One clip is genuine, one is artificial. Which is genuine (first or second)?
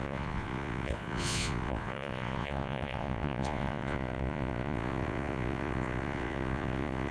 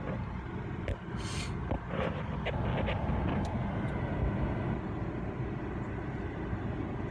second